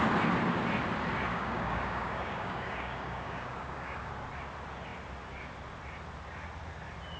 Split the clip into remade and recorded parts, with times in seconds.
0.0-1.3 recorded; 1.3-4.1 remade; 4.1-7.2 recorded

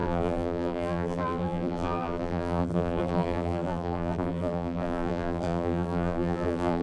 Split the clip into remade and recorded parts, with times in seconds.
0.0-6.8 remade

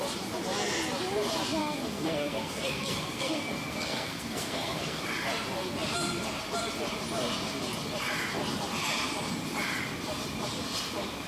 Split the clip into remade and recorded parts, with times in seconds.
0.0-1.6 recorded; 1.6-5.0 remade; 5.0-11.3 recorded

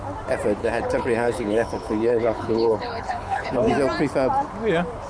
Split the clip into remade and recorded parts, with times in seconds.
0.0-0.6 recorded; 0.6-3.7 remade; 3.7-5.1 recorded

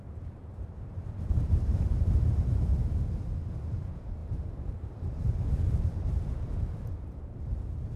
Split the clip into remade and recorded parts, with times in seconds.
0.0-2.7 remade; 2.7-3.5 recorded; 3.5-8.0 remade

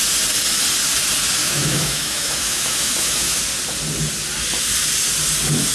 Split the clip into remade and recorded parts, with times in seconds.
0.0-1.4 recorded; 1.4-3.4 remade; 3.4-5.7 recorded

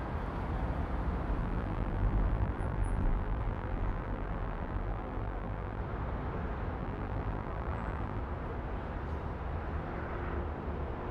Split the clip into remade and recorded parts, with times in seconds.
0.0-1.4 recorded; 1.4-5.8 remade; 5.8-6.8 recorded; 6.8-8.2 remade; 8.2-11.1 recorded

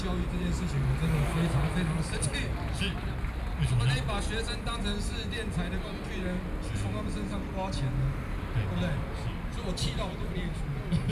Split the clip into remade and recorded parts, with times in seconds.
0.0-11.1 recorded